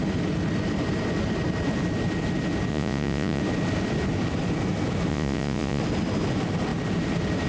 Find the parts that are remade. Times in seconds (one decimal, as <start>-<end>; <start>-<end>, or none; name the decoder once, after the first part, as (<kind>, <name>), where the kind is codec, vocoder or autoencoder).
2.7-3.4 (vocoder, Vocos); 5.1-5.8